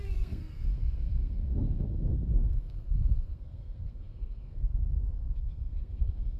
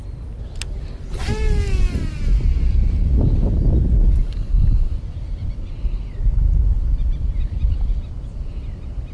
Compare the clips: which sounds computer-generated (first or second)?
first